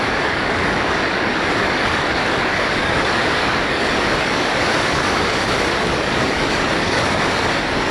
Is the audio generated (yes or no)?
yes